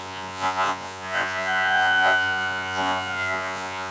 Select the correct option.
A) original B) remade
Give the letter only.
B